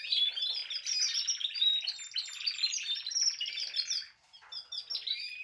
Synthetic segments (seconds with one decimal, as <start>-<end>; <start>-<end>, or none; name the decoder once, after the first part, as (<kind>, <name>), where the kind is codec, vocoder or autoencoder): none